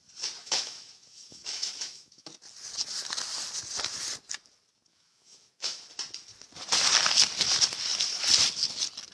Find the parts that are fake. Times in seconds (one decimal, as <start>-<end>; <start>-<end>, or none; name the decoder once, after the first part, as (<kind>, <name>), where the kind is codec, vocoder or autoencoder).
0.4-2.3 (autoencoder, DAC-VAE); 4.9-5.8